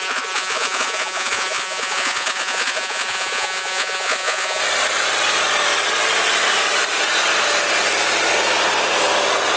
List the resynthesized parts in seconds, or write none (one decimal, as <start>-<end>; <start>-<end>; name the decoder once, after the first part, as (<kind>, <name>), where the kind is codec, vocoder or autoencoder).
0.0-4.6 (vocoder, Vocos)